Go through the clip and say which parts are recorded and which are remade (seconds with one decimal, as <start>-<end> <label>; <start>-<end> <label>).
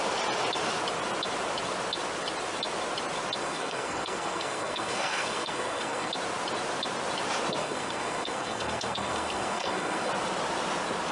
0.0-3.4 recorded; 3.4-6.1 remade; 6.1-7.6 recorded; 7.6-10.1 remade; 10.1-11.1 recorded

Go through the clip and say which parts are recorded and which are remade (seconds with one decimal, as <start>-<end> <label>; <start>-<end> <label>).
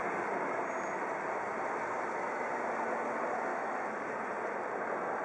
0.0-3.5 recorded; 3.5-4.0 remade; 4.0-5.2 recorded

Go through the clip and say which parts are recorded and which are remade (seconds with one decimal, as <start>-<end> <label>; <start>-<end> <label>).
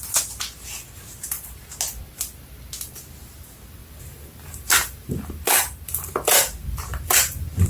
0.0-3.8 recorded; 3.8-7.7 remade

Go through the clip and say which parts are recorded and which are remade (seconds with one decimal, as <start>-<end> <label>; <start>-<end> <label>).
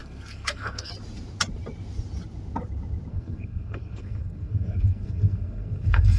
0.0-0.9 remade; 0.9-3.1 recorded; 3.1-6.2 remade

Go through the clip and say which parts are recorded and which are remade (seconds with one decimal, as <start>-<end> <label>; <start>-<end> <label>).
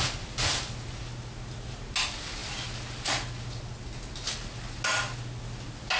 0.0-6.0 recorded